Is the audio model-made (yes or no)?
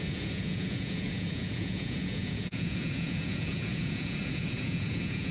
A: yes